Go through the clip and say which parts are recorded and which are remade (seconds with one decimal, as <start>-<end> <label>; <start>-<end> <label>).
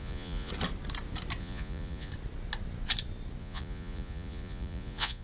0.0-0.5 remade; 0.5-1.4 recorded; 1.4-2.1 remade; 2.1-3.4 recorded; 3.4-5.2 remade